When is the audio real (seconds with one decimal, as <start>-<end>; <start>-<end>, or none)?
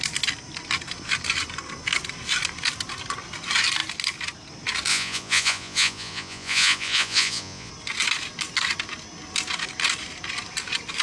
0.0-4.9; 7.7-11.0